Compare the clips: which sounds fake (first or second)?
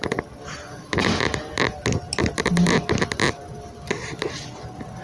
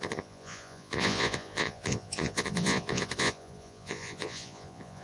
second